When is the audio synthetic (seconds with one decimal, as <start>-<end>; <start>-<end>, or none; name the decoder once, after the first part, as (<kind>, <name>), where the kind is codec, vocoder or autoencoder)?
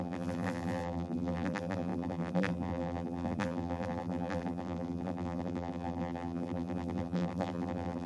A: 0.0-8.1 (vocoder, BigVGAN v2)